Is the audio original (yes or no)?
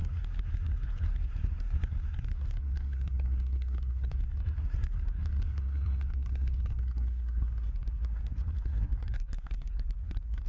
no